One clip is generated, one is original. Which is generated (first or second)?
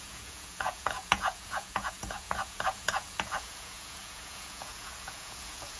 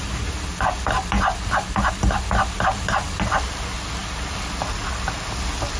first